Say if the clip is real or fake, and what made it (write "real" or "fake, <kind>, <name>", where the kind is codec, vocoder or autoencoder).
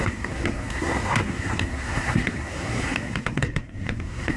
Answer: fake, codec, SNAC